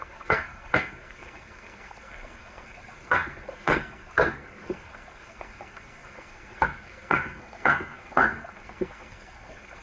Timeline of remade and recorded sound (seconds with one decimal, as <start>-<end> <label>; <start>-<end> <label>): 0.0-9.8 remade